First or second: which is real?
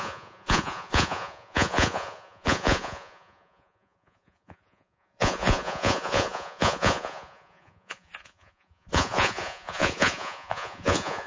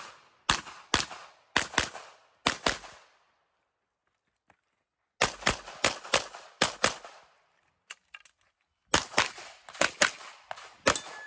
second